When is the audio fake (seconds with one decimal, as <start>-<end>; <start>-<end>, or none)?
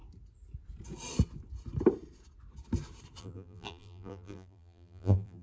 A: 3.2-5.4